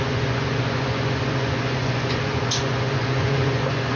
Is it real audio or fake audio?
fake